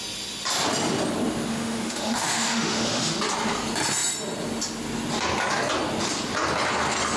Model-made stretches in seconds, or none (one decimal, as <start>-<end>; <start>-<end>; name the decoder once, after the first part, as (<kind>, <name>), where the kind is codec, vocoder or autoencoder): 1.5-3.1 (autoencoder, DAC-VAE)